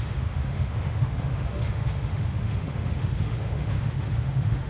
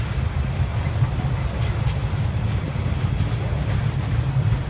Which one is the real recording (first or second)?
second